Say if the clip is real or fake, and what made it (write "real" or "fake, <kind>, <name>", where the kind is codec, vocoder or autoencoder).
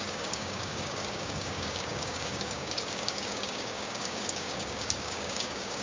fake, codec, DAC